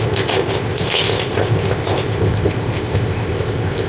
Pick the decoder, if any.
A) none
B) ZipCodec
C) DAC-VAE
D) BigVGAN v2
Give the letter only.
B